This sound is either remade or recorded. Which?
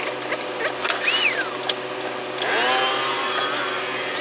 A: recorded